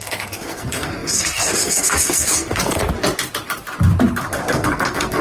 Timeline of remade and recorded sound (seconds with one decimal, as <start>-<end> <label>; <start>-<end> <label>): 0.0-2.8 remade; 2.8-4.3 recorded; 4.3-5.2 remade